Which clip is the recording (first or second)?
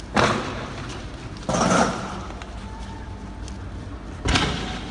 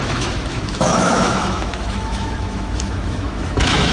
first